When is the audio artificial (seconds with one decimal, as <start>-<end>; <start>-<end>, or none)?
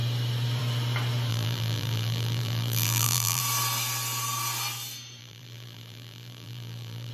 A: 1.3-3.4; 5.2-7.1